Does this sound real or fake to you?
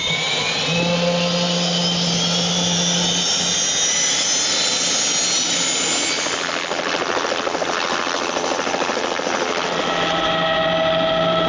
real